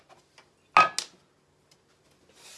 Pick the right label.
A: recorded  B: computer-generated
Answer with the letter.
A